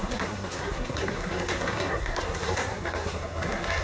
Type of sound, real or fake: fake